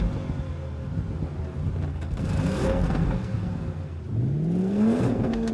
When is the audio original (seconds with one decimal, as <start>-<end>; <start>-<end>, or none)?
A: 0.0-1.9; 4.0-4.6